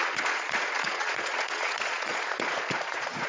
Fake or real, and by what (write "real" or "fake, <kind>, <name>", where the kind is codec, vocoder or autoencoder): fake, vocoder, Vocos